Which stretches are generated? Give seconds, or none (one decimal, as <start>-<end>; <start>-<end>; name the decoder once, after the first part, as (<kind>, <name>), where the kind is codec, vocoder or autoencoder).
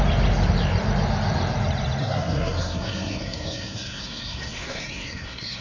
2.0-5.6 (codec, SNAC)